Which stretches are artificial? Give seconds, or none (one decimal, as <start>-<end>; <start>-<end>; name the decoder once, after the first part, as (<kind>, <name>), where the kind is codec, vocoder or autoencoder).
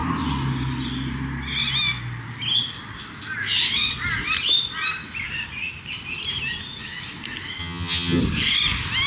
7.6-8.2 (vocoder, HiFi-GAN)